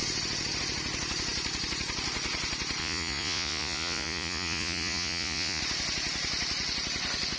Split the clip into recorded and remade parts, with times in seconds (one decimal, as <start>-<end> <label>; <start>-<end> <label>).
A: 0.0-2.8 recorded; 2.8-5.6 remade; 5.6-7.4 recorded